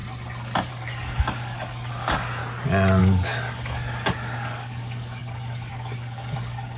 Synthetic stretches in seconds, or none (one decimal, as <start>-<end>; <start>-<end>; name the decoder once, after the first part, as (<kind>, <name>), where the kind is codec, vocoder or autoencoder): 0.7-2.4 (codec, DAC); 3.0-6.8

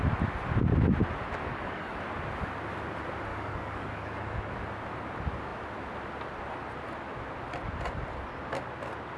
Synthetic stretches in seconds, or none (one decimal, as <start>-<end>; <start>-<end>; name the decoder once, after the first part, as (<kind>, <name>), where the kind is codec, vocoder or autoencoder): 1.4-2.0 (codec, DAC); 3.3-4.5

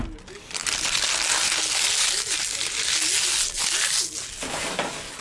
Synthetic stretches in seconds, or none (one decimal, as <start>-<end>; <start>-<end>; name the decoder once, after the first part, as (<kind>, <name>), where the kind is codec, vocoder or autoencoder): none

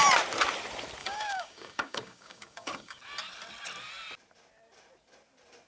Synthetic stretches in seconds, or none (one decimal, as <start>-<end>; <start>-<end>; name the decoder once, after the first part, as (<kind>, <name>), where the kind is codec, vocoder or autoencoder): 1.0-3.0 (codec, DAC)

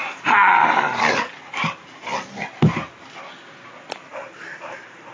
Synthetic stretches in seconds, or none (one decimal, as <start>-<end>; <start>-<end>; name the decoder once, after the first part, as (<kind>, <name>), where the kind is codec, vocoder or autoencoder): none

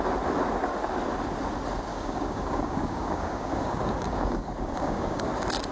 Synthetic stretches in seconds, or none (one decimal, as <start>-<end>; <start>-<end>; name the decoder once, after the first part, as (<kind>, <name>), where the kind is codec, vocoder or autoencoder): 1.9-5.3 (codec, DAC)

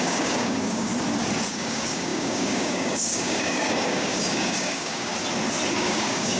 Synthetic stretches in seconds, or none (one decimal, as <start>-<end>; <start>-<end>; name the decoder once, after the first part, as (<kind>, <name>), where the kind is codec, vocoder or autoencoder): 0.0-0.9 (codec, DAC); 1.5-5.1; 5.7-6.4

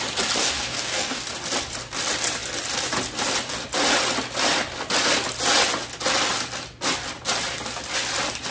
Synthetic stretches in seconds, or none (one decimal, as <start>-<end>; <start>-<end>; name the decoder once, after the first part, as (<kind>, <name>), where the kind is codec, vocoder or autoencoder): 0.4-1.2 (codec, DAC)